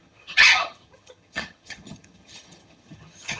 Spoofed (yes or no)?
yes